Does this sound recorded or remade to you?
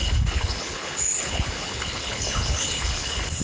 remade